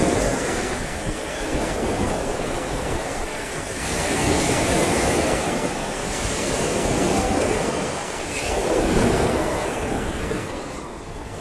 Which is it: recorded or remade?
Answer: remade